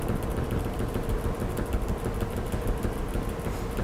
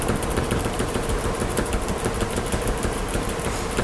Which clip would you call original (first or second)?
first